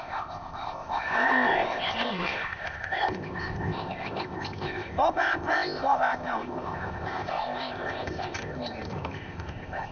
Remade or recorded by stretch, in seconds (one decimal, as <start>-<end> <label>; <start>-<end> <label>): 0.0-9.9 remade